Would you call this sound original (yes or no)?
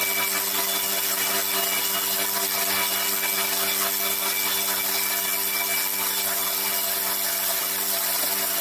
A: yes